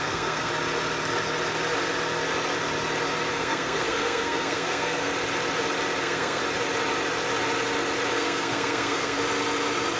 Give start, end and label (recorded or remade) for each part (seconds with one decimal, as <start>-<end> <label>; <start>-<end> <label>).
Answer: 0.0-0.5 remade; 0.5-3.3 recorded; 3.3-5.1 remade; 5.1-6.0 recorded; 6.0-6.4 remade; 6.4-8.1 recorded; 8.1-9.2 remade; 9.2-10.0 recorded